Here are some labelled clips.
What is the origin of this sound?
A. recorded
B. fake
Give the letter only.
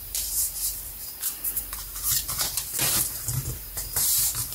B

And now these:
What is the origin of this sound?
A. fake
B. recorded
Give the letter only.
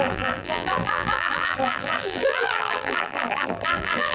A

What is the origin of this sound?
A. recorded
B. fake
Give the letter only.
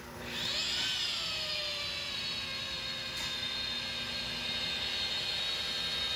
A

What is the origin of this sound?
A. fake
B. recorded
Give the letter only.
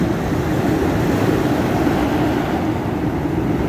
B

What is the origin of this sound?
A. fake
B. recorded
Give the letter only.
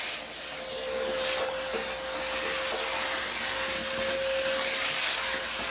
B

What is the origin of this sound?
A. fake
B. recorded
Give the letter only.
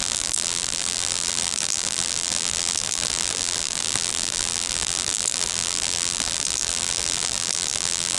A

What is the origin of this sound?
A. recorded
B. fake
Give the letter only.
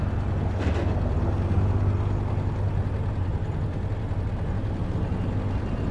A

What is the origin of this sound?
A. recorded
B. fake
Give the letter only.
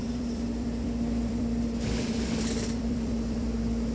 B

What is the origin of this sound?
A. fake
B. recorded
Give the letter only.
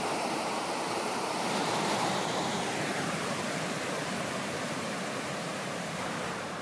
A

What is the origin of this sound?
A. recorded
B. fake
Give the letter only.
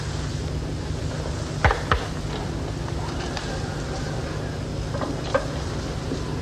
A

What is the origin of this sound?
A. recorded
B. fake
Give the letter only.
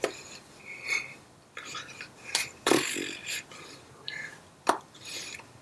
B